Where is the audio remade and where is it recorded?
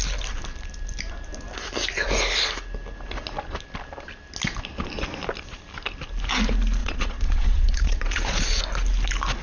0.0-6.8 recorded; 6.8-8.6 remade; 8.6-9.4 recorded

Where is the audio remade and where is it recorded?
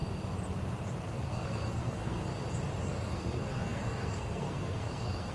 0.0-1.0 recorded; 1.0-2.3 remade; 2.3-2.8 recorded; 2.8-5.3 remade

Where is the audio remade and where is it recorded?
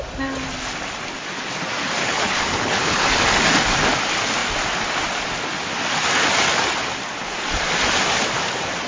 0.0-2.0 recorded; 2.0-3.2 remade; 3.2-8.9 recorded